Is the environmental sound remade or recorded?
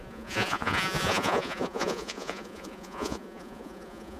remade